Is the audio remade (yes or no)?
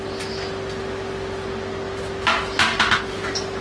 no